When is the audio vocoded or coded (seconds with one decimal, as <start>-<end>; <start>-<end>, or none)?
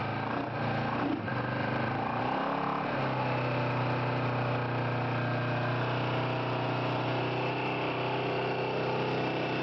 1.3-2.2